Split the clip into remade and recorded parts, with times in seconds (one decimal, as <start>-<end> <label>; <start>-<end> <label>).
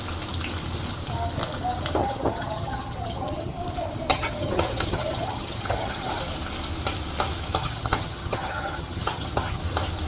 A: 0.0-2.0 recorded; 2.0-3.6 remade; 3.6-4.1 recorded; 4.1-6.1 remade; 6.1-7.6 recorded; 7.6-9.6 remade; 9.6-10.1 recorded